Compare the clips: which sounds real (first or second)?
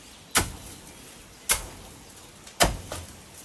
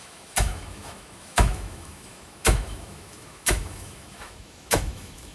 first